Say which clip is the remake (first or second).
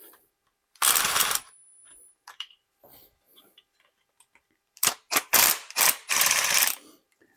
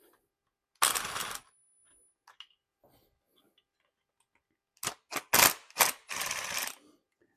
first